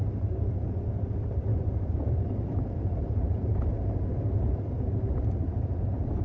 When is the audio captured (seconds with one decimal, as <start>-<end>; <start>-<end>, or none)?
none